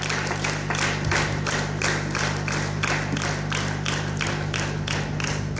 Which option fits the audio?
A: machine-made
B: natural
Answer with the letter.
B